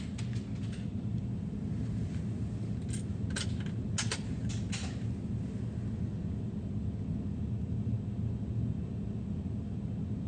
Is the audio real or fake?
real